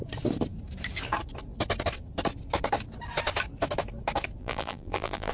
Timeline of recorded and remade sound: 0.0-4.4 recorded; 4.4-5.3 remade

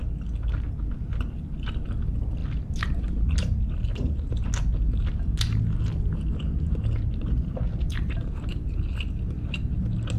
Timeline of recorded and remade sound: 0.0-10.2 recorded

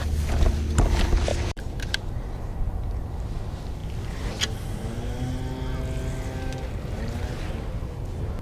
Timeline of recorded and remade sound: 0.0-1.3 recorded; 1.3-2.4 remade; 2.4-8.4 recorded

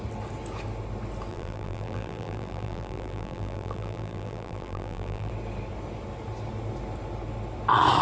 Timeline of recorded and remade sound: 0.0-1.3 recorded; 1.3-5.3 remade; 5.3-8.0 recorded

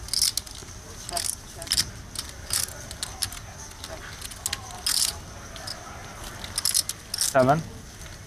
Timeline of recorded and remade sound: 0.0-0.6 recorded; 0.6-2.6 remade; 2.6-8.3 recorded

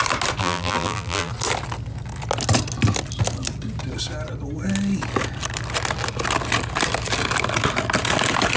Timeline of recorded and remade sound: 0.0-0.4 recorded; 0.4-1.3 remade; 1.3-8.6 recorded